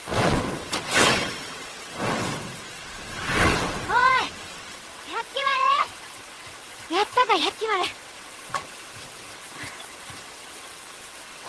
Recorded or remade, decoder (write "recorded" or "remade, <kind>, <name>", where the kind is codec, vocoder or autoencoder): remade, vocoder, WaveNeXt